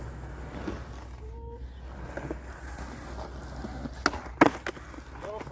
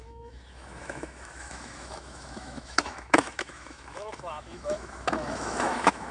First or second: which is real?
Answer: first